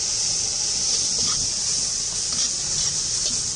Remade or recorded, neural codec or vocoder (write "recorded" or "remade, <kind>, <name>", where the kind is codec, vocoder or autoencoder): recorded